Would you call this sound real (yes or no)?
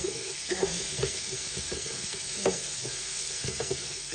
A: no